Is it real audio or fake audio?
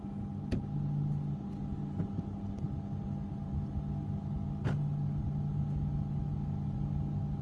real